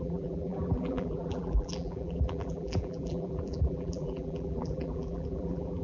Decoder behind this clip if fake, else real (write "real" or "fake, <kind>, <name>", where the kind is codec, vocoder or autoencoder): fake, vocoder, BigVGAN v2